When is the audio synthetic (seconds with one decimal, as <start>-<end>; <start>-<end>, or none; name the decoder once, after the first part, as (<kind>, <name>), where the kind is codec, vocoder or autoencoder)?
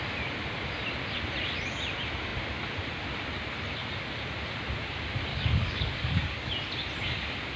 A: 5.3-6.5 (codec, DAC)